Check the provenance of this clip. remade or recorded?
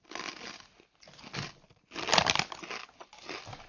recorded